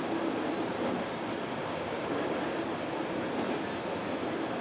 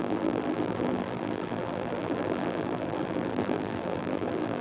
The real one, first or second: first